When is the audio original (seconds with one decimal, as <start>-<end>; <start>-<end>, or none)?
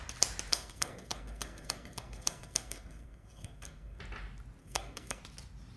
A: 0.0-0.5; 4.0-4.6; 5.2-5.8